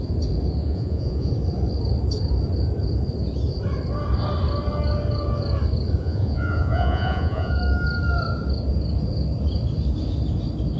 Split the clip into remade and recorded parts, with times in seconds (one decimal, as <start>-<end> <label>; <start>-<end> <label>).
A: 0.0-0.6 recorded; 0.6-1.3 remade; 1.3-6.0 recorded; 6.0-7.6 remade; 7.6-10.8 recorded